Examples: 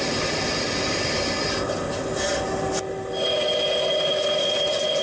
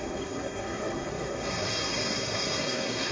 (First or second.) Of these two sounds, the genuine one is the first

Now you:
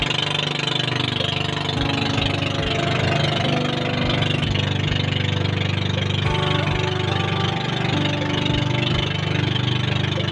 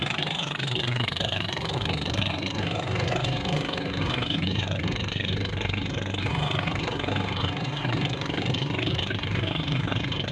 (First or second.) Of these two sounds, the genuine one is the first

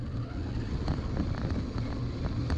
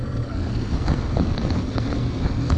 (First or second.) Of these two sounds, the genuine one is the first